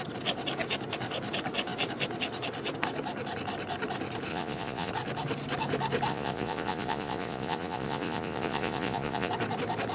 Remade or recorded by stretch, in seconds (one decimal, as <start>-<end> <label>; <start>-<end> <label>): 0.0-4.3 recorded; 4.3-4.9 remade; 4.9-6.1 recorded; 6.1-9.3 remade; 9.3-9.9 recorded